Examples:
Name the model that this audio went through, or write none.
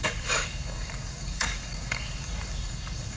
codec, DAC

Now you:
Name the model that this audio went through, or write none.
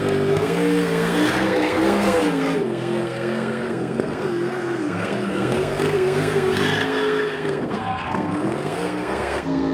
codec, SNAC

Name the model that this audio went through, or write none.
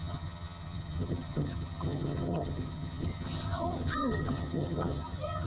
vocoder, HiFi-GAN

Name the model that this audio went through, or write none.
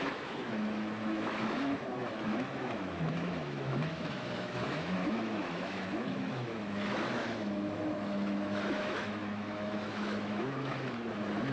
autoencoder, DAC-VAE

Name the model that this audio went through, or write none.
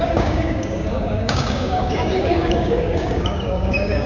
codec, DAC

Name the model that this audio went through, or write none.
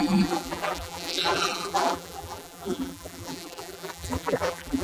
vocoder, BigVGAN v2